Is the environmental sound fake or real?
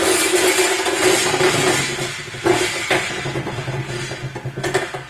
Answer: real